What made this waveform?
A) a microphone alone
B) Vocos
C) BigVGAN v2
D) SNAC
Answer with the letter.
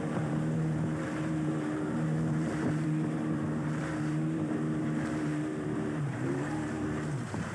C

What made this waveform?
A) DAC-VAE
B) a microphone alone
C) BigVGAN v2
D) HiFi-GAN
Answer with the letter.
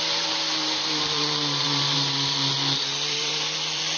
C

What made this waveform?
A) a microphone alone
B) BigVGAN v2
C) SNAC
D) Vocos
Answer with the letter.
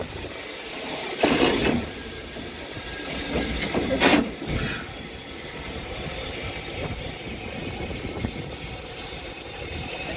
B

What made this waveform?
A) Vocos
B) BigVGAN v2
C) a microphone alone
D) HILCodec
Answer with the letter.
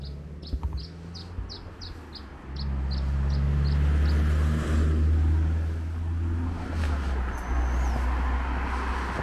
C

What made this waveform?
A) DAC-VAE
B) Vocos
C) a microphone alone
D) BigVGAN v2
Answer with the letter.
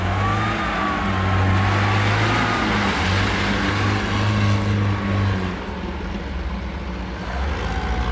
C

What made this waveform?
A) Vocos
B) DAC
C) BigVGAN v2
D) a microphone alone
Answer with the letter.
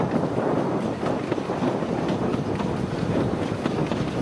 D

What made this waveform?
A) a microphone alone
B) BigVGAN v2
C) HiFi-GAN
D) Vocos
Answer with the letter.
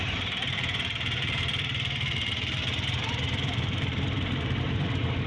B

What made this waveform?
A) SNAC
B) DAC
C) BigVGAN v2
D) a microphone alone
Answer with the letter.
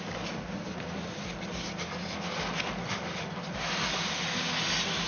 D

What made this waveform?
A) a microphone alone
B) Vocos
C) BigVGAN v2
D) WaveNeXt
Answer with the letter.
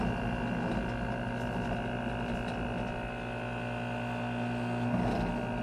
A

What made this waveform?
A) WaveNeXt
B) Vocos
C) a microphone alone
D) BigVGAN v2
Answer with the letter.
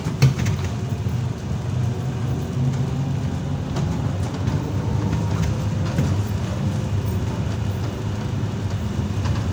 C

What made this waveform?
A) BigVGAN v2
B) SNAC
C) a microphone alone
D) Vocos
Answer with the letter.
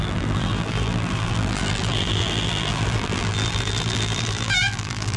A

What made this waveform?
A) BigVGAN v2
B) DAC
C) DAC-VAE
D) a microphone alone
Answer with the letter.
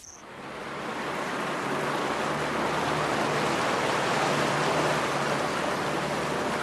D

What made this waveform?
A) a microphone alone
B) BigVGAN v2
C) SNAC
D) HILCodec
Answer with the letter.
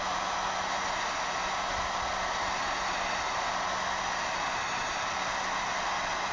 A